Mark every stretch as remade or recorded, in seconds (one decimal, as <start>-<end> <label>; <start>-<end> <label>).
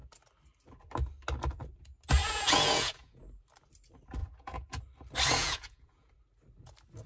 0.0-2.2 recorded; 2.2-3.2 remade; 3.2-4.2 recorded; 4.2-4.8 remade; 4.8-5.4 recorded; 5.4-6.1 remade; 6.1-7.1 recorded